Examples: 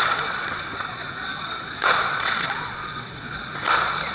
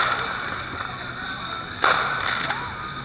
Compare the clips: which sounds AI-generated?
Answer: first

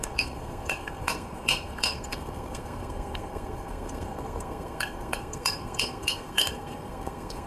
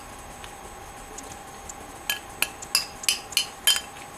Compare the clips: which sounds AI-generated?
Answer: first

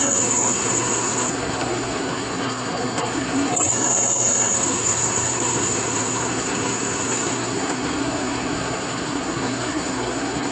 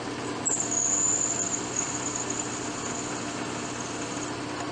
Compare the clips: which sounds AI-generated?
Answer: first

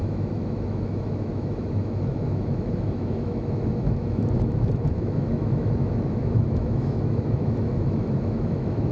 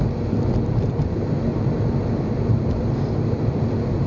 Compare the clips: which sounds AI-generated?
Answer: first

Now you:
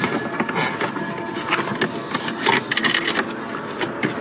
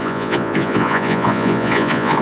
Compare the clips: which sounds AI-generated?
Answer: second